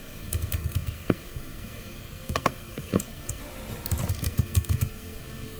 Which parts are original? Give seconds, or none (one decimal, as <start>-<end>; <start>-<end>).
3.4-4.1